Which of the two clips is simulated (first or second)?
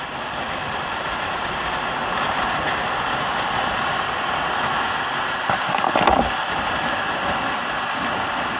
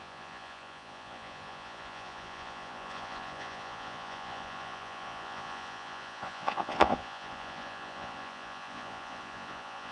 second